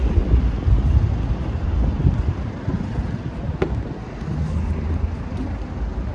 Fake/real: real